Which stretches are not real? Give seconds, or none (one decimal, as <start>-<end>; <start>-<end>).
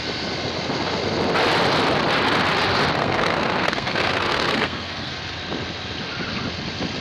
3.0-5.1